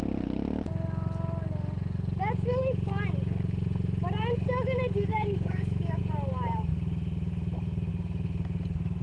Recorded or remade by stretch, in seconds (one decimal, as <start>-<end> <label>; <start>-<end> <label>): 0.0-5.1 recorded; 5.1-6.0 remade; 6.0-9.0 recorded